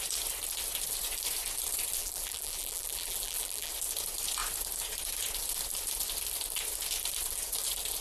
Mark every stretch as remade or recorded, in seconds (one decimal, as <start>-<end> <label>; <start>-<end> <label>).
0.0-2.0 recorded; 2.0-3.7 remade; 3.7-8.0 recorded